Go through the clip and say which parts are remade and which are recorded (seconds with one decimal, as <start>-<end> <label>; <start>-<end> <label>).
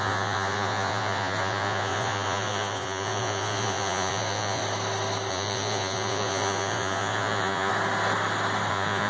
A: 0.0-4.6 remade; 4.6-5.3 recorded; 5.3-7.7 remade; 7.7-8.7 recorded; 8.7-9.1 remade